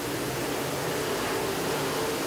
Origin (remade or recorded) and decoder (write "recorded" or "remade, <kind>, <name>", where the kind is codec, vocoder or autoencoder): recorded